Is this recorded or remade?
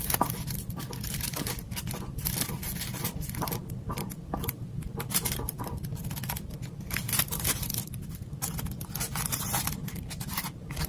recorded